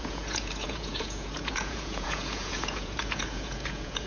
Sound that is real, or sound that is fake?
fake